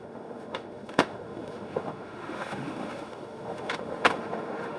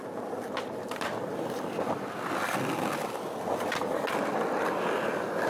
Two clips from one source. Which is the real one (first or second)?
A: second